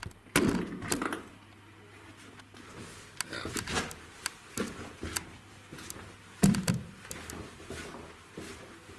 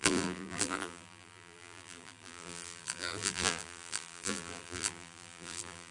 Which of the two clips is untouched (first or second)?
first